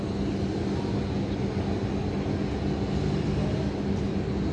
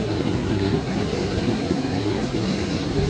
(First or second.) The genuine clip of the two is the first